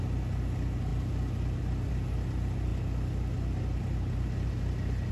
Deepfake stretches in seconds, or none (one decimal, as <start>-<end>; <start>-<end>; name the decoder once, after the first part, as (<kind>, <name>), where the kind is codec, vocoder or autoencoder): none